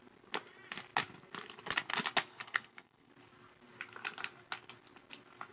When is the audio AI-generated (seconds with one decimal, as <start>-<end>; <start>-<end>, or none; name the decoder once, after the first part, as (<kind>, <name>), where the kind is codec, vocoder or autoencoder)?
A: 2.3-3.1 (codec, SNAC)